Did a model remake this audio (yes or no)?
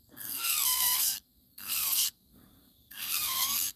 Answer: yes